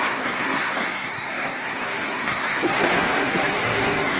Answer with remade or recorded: remade